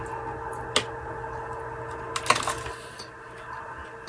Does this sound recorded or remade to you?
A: recorded